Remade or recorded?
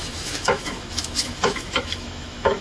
remade